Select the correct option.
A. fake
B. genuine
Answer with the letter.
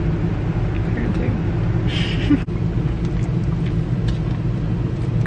B